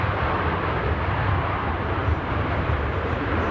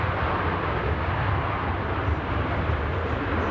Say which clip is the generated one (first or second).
first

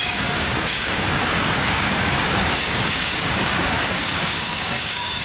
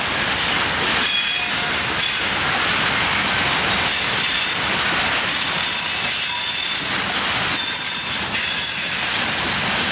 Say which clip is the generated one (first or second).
first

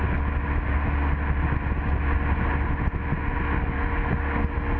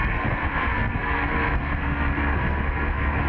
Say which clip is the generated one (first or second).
second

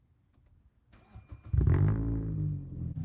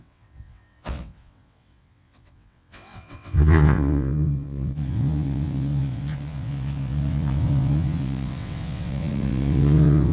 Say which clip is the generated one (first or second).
second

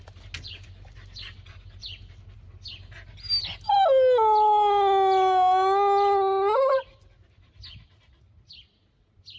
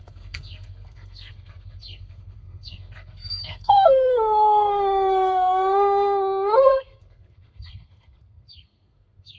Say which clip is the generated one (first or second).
second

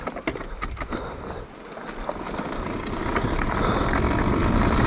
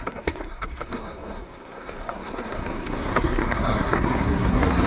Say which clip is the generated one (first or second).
second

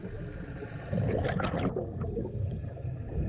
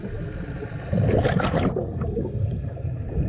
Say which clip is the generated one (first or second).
second